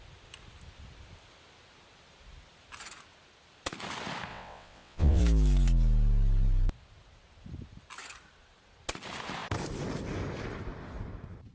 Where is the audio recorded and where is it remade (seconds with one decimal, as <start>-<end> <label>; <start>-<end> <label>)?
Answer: 0.0-4.3 recorded; 4.3-5.2 remade; 5.2-11.5 recorded